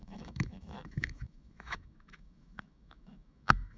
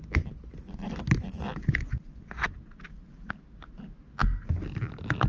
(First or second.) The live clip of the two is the second